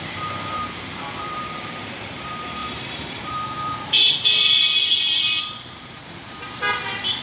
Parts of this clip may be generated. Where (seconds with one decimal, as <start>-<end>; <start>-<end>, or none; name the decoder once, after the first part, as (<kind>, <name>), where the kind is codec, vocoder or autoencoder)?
0.0-7.2 (vocoder, BigVGAN v2)

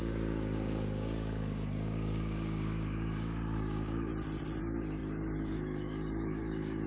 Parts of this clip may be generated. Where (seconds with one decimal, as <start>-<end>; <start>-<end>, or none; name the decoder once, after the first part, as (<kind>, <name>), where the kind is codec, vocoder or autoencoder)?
0.0-4.1 (codec, DAC); 4.6-6.9

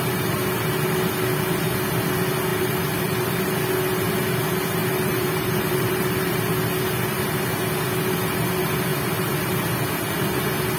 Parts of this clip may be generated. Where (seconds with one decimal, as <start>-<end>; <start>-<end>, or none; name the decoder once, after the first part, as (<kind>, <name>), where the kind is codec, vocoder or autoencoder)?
2.5-3.4 (vocoder, BigVGAN v2); 4.8-6.4